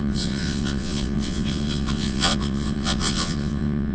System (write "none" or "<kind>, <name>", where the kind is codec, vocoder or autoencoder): vocoder, WaveNeXt